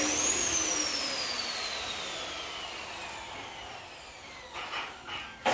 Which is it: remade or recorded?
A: recorded